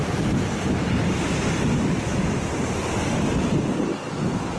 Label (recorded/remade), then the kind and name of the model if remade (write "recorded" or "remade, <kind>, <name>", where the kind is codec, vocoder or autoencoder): recorded